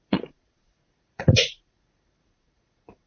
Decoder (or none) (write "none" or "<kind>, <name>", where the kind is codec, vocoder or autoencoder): vocoder, Vocos